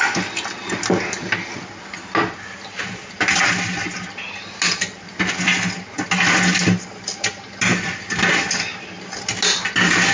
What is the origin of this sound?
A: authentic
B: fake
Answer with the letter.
A